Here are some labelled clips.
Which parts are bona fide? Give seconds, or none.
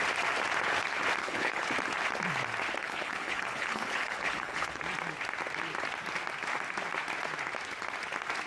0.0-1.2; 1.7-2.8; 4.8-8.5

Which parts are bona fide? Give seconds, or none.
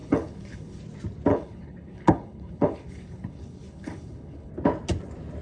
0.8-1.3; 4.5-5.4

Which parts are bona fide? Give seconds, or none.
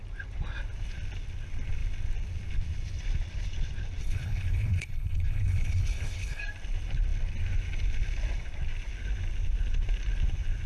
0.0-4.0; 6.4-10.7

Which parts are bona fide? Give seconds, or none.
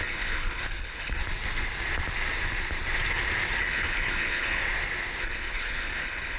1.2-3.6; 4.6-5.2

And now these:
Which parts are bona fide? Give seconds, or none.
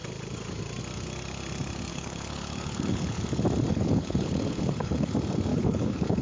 0.0-1.9; 3.2-3.7; 5.1-5.5